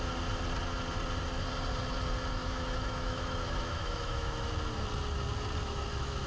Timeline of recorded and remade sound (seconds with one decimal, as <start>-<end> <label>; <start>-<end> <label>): 0.0-2.4 recorded; 2.4-4.5 remade; 4.5-5.6 recorded; 5.6-6.3 remade